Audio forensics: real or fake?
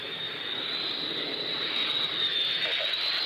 fake